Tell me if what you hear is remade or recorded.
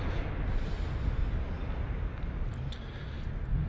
recorded